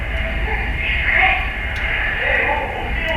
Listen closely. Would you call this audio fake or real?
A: real